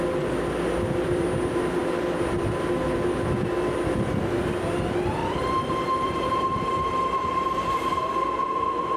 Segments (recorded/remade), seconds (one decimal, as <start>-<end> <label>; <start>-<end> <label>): 0.0-5.2 recorded; 5.2-8.1 remade; 8.1-9.0 recorded